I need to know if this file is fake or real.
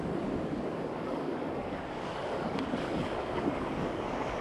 fake